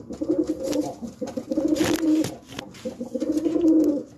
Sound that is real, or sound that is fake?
real